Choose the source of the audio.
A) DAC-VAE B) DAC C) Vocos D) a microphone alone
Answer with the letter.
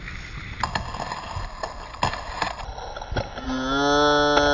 D